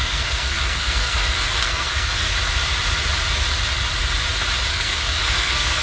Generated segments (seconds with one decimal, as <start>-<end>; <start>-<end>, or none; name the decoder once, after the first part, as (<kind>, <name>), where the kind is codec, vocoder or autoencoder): 0.0-2.3 (codec, SNAC); 4.7-5.8